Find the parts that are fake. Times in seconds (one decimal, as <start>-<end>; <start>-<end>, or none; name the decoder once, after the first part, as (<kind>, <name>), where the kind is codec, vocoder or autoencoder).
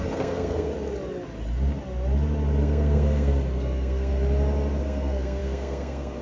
0.0-0.7 (codec, SNAC); 2.6-4.1; 4.8-6.2